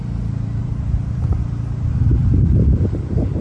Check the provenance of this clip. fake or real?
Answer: fake